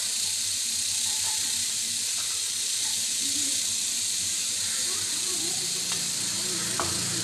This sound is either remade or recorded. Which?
remade